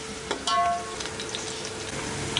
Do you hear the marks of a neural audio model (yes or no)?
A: no